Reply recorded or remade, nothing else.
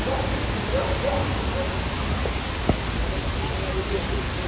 recorded